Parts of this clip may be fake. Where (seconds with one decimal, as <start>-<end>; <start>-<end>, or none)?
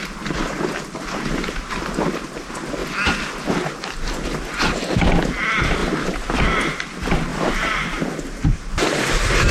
7.3-9.5